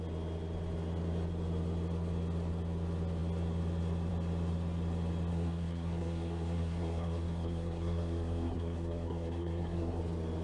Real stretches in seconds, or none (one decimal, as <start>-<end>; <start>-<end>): 0.0-5.3; 10.0-10.4